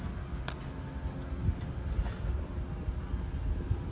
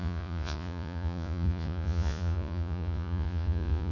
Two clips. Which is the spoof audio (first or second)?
second